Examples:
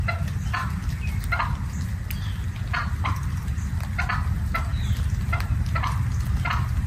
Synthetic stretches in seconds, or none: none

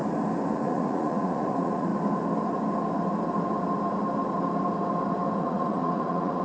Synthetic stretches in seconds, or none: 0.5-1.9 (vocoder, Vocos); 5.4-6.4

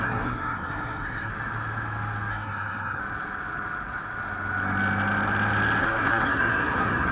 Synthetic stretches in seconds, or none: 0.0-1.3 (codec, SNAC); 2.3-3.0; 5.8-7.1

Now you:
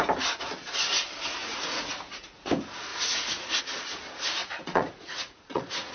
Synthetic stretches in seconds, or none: 1.4-2.5 (vocoder, Vocos); 2.9-3.6; 4.4-5.9

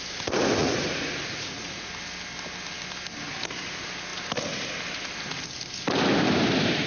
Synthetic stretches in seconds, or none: 0.6-1.9 (vocoder, Vocos)

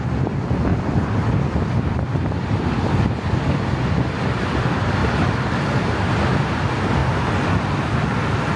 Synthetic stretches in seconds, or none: 0.7-3.0 (vocoder, BigVGAN v2); 5.0-5.9